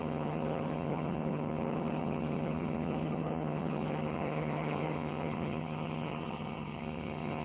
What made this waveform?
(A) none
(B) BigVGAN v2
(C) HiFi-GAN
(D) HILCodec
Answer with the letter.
C